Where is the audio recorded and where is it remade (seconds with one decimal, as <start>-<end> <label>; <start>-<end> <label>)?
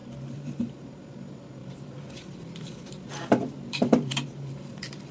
0.0-0.8 remade; 0.8-1.6 recorded; 1.6-5.1 remade